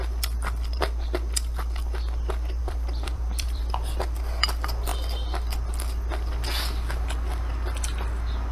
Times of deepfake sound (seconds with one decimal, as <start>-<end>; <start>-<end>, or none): 2.6-3.6